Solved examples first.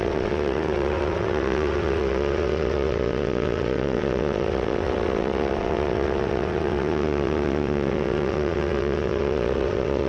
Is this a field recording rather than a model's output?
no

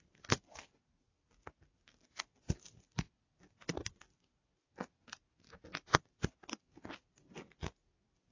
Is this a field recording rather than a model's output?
yes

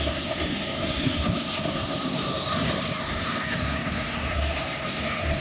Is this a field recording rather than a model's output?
no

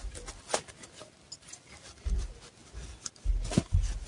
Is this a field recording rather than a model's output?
yes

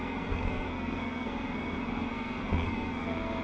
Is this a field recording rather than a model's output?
no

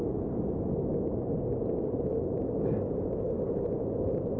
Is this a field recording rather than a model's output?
yes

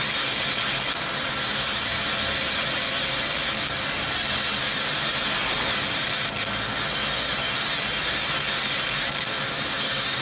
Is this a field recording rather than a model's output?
yes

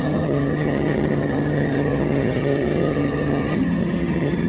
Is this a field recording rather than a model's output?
no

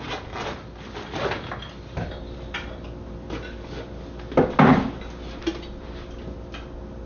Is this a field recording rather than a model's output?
yes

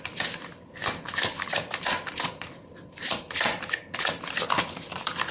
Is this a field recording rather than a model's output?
no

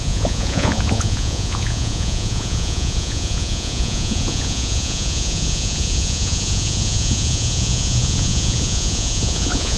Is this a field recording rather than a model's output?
no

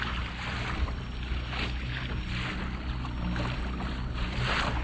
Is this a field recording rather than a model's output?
yes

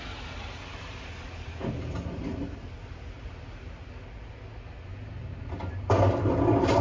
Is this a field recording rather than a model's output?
yes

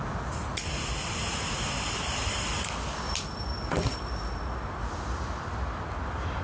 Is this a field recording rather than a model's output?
yes